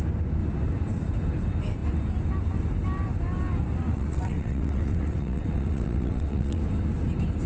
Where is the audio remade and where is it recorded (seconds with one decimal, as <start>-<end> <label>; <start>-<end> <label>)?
0.0-3.9 recorded; 3.9-6.6 remade; 6.6-7.5 recorded